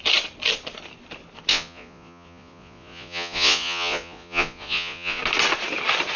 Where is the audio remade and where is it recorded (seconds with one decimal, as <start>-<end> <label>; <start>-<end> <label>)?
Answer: 0.0-1.5 recorded; 1.5-5.2 remade; 5.2-6.2 recorded